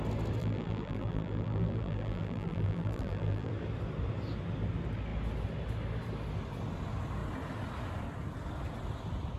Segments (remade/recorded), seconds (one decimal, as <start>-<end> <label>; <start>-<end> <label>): 0.0-0.4 recorded; 0.4-3.5 remade; 3.5-9.4 recorded